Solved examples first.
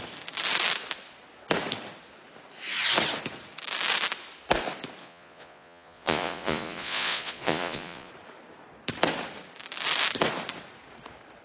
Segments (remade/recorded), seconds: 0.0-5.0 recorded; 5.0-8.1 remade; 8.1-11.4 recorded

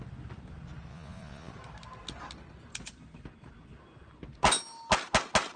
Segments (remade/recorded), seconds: 0.0-0.9 recorded; 0.9-1.5 remade; 1.5-5.6 recorded